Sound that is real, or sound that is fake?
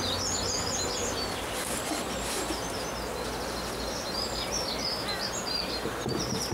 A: real